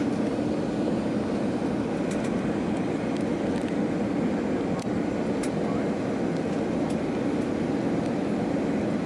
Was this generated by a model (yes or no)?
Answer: no